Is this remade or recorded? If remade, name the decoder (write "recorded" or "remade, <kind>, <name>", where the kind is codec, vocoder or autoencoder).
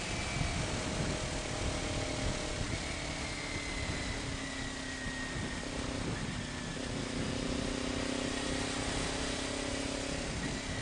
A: recorded